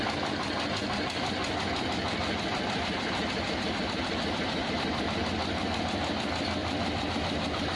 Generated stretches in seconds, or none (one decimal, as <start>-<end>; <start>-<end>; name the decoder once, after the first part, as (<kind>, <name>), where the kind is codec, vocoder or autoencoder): 1.4-5.8 (vocoder, BigVGAN v2); 6.6-7.1